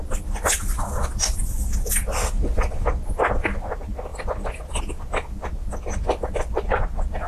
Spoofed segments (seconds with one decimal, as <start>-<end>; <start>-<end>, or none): none